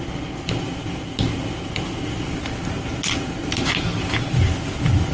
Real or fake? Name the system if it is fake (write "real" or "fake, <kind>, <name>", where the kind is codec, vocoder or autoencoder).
real